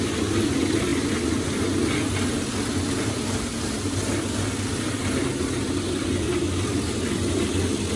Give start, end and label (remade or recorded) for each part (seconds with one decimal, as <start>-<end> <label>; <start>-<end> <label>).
0.0-8.0 recorded